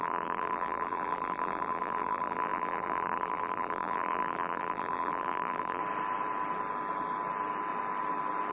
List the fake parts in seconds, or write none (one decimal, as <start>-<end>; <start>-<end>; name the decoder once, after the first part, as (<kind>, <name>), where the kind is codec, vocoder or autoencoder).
0.0-5.8 (vocoder, BigVGAN v2)